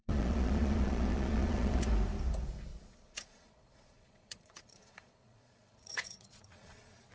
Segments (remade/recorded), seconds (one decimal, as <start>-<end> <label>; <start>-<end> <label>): 0.0-1.8 remade; 1.8-2.7 recorded; 2.7-7.1 remade